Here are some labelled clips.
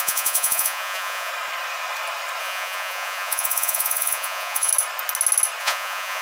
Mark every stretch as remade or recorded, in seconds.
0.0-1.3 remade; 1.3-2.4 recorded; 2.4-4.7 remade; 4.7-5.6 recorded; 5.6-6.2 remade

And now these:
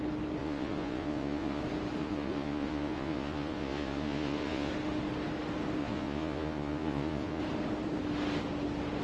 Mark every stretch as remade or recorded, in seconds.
0.0-0.4 recorded; 0.4-1.6 remade; 1.6-2.0 recorded; 2.0-4.7 remade; 4.7-5.8 recorded; 5.8-7.4 remade; 7.4-9.0 recorded

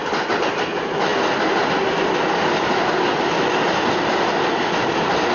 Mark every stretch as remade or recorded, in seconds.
0.0-5.3 recorded